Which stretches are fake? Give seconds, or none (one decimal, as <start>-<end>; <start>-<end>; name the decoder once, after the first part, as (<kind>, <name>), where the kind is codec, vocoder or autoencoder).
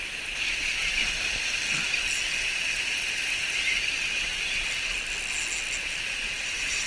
none